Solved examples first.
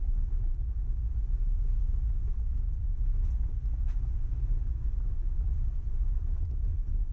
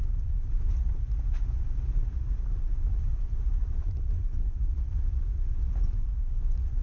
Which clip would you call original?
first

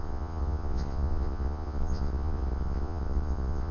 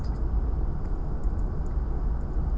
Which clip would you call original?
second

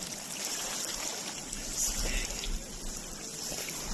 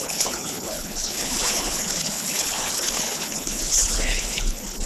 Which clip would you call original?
first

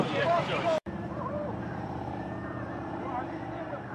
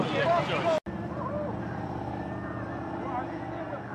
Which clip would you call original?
second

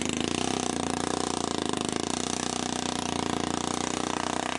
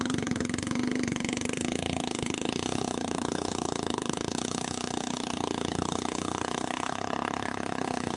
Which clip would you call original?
first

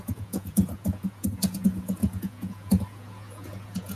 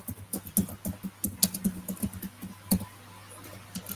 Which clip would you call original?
second